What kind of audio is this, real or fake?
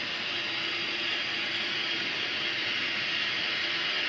real